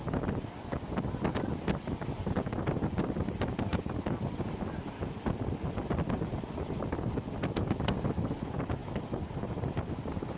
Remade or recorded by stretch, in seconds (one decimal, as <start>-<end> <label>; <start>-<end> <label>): 0.0-10.4 recorded